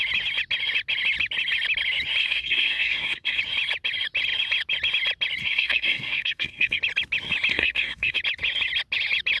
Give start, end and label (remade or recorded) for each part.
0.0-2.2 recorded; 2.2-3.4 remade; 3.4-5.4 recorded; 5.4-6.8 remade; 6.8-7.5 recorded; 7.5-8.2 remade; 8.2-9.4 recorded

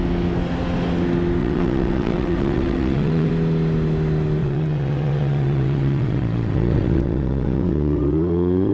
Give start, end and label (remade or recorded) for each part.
0.0-1.4 recorded; 1.4-3.3 remade; 3.3-4.4 recorded; 4.4-8.7 remade